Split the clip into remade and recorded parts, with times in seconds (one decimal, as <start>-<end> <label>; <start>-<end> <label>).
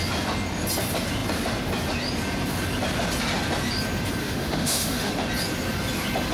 0.0-4.2 recorded; 4.2-5.1 remade; 5.1-6.3 recorded